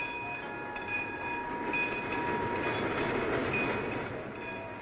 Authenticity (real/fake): real